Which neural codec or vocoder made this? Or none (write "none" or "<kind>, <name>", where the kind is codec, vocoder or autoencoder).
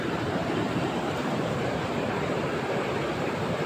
vocoder, BigVGAN v2